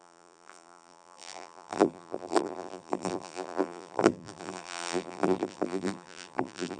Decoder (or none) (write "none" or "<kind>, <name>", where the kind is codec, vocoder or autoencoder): vocoder, BigVGAN v2